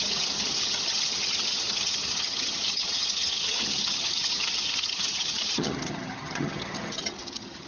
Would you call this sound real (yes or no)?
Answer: no